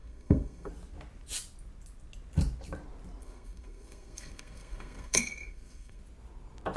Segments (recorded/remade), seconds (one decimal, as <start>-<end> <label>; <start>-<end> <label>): 0.0-0.7 remade; 0.7-3.2 recorded; 3.2-6.0 remade; 6.0-6.8 recorded